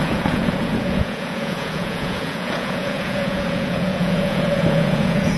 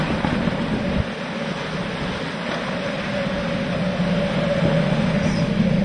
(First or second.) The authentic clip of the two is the second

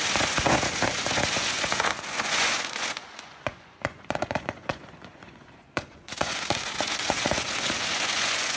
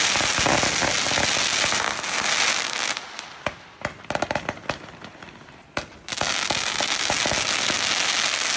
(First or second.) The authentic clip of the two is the second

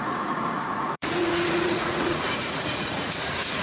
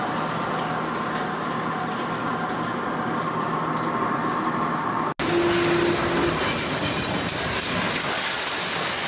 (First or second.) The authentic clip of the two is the second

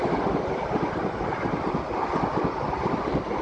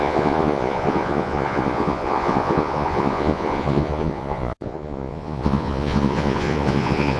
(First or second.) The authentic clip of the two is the first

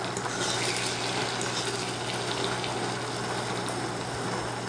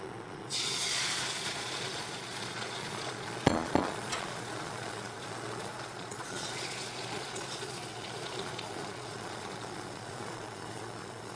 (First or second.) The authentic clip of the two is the first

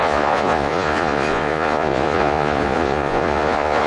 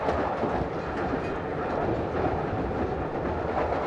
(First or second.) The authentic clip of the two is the second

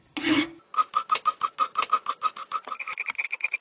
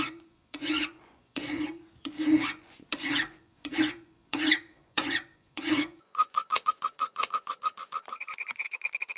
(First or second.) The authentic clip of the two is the first